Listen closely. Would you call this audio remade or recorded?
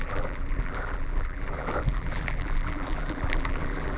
remade